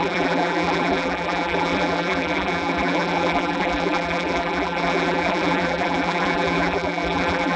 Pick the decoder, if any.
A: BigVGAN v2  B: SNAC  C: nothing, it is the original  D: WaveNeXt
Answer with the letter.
A